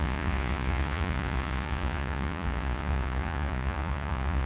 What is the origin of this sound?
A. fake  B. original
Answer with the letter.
A